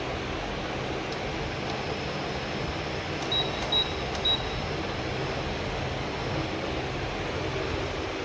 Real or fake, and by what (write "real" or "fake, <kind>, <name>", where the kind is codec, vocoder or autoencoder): real